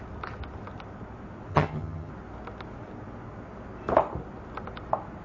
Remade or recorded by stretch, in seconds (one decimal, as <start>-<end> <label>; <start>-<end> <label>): 0.0-1.5 recorded; 1.5-2.1 remade; 2.1-5.2 recorded